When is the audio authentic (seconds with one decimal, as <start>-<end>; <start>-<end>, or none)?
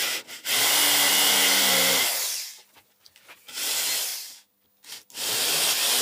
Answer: 0.0-6.0